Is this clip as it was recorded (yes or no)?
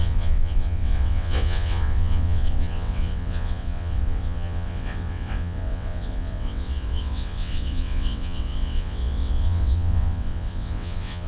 no